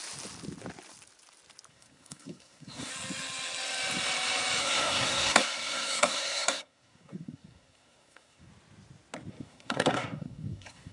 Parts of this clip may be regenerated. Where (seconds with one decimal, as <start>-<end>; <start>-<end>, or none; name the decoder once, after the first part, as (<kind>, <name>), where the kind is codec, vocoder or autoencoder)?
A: 1.7-2.9 (codec, SNAC); 4.6-8.5; 9.3-10.9